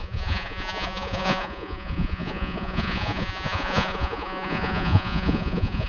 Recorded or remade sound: remade